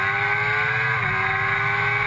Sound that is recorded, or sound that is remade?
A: recorded